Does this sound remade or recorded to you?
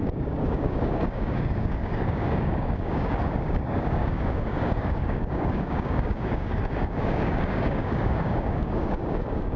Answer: remade